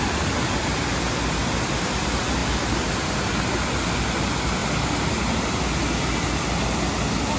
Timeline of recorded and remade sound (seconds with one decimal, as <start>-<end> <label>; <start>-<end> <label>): 0.0-7.4 recorded